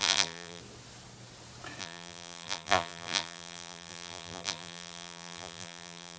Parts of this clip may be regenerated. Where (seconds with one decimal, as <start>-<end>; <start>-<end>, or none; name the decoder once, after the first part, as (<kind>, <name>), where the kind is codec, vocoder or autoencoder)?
0.0-0.6 (vocoder, BigVGAN v2); 1.8-6.2